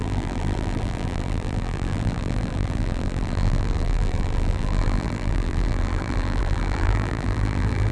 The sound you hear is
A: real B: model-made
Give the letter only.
B